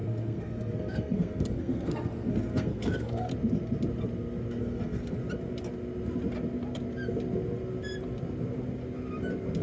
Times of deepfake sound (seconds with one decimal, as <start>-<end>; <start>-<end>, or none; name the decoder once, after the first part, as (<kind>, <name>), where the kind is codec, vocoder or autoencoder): 0.0-3.3 (codec, SNAC); 4.6-5.2